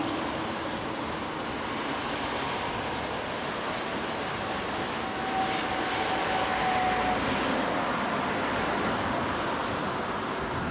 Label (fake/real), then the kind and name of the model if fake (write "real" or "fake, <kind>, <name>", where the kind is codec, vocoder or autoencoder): real